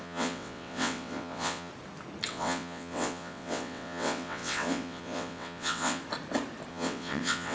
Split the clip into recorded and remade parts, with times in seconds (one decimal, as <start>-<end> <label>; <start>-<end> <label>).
0.0-1.7 remade; 1.7-2.3 recorded; 2.3-6.0 remade; 6.0-6.7 recorded; 6.7-7.5 remade